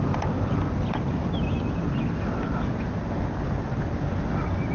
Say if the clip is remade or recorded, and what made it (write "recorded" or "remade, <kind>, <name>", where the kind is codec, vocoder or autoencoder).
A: recorded